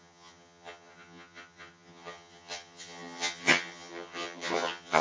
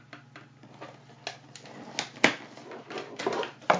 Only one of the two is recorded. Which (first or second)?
second